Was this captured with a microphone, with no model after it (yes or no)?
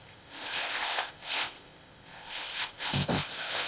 no